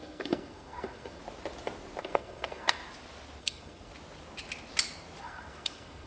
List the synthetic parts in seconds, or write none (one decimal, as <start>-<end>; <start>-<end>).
0.0-1.2; 2.0-2.8; 3.4-3.9; 5.2-6.1